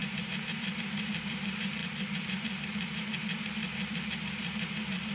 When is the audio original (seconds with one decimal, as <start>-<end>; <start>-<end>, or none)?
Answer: none